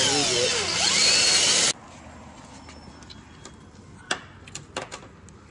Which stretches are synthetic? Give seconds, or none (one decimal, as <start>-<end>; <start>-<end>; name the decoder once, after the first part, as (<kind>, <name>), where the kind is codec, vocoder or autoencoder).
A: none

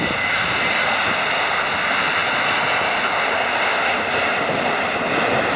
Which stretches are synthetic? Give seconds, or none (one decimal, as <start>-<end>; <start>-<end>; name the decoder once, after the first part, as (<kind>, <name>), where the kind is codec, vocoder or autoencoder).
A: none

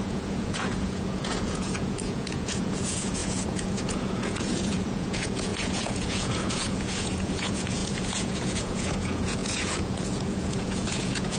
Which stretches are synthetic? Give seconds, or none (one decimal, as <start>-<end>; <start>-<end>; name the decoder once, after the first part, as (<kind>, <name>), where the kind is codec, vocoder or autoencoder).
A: 0.0-11.4 (vocoder, Vocos)

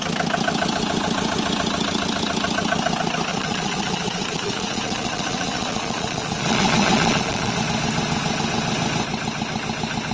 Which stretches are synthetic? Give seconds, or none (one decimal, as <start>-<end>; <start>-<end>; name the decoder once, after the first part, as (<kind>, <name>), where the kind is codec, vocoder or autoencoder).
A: 3.3-7.6 (vocoder, Vocos)

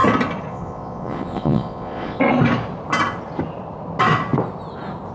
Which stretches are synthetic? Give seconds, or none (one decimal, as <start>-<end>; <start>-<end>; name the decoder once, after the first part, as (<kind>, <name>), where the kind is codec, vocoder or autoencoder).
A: 0.5-2.2 (vocoder, Vocos)

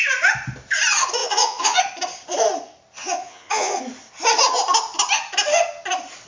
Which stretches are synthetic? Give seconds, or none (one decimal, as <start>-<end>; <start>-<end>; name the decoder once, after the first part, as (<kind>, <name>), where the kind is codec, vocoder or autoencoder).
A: 1.2-1.8 (vocoder, Vocos); 3.0-3.8

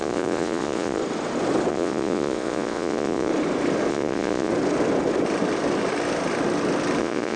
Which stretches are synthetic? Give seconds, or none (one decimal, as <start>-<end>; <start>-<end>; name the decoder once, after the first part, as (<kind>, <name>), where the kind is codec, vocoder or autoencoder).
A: 0.0-1.0 (vocoder, Vocos); 1.7-3.3; 3.9-4.5; 7.0-7.4

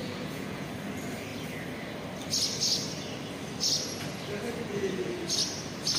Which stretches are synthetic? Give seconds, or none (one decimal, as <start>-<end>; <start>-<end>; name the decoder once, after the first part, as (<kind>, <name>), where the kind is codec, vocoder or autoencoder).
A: 0.0-0.7 (vocoder, Vocos); 4.7-5.3